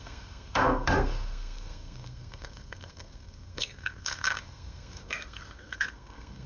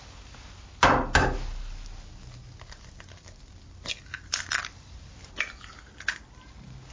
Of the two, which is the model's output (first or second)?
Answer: first